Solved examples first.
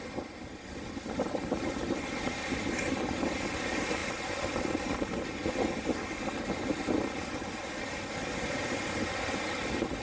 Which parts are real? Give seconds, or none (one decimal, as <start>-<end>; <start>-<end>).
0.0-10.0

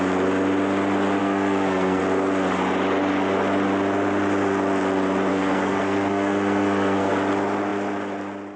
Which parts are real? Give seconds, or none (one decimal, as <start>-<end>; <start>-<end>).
0.0-1.2; 2.0-5.3; 7.1-8.6

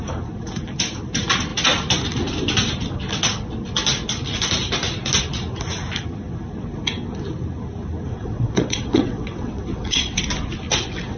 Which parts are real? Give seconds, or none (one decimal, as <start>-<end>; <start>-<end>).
0.0-8.2; 10.2-11.2

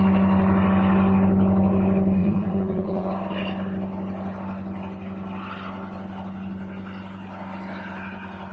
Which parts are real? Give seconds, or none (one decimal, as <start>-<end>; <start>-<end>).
0.0-2.2; 3.1-8.5

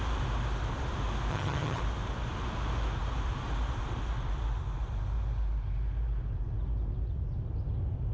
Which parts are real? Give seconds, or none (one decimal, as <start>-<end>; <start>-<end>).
0.0-1.3; 1.8-8.1

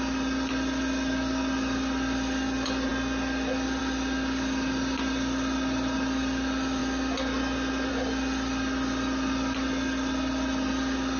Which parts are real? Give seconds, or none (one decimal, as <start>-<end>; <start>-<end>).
0.0-11.2